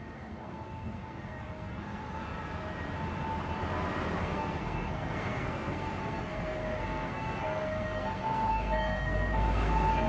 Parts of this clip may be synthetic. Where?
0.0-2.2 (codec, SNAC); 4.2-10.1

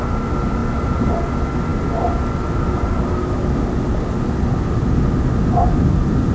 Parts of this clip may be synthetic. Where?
none

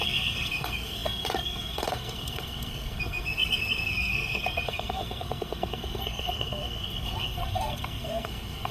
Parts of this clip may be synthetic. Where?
0.0-8.7 (codec, SNAC)

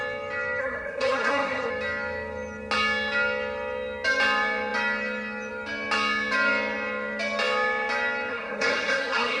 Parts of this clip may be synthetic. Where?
0.6-1.7 (codec, SNAC); 8.3-9.4

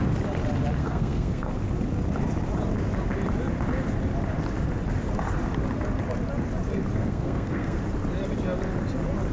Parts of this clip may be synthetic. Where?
0.8-1.5 (codec, SNAC); 7.0-7.8